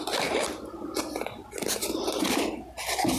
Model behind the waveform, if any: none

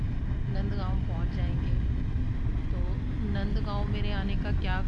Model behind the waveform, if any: none